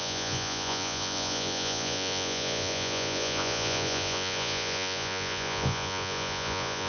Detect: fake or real fake